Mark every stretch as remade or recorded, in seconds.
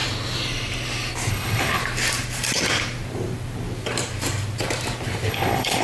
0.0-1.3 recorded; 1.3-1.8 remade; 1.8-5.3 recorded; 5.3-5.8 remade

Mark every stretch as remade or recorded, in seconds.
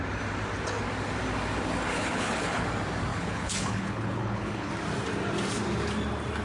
0.0-1.9 recorded; 1.9-2.6 remade; 2.6-3.1 recorded; 3.1-4.7 remade; 4.7-6.4 recorded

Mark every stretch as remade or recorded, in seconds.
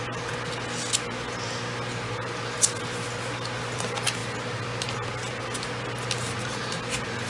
0.0-7.3 recorded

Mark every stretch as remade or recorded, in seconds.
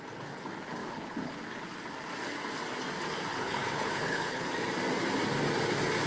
0.0-0.8 recorded; 0.8-1.4 remade; 1.4-3.3 recorded; 3.3-4.5 remade; 4.5-6.1 recorded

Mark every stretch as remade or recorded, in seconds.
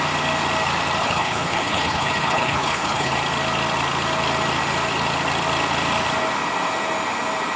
0.0-1.0 recorded; 1.0-3.1 remade; 3.1-7.6 recorded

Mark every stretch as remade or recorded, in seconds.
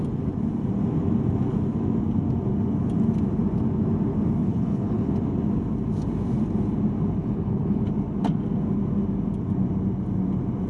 0.0-4.4 recorded; 4.4-5.1 remade; 5.1-7.2 recorded; 7.2-7.9 remade; 7.9-10.7 recorded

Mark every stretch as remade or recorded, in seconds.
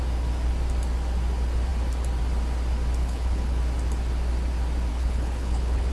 0.0-3.0 recorded; 3.0-3.6 remade; 3.6-4.9 recorded; 4.9-5.9 remade